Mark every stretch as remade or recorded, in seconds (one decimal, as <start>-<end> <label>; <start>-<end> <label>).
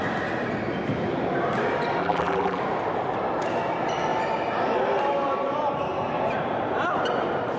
0.0-2.0 recorded; 2.0-2.6 remade; 2.6-7.6 recorded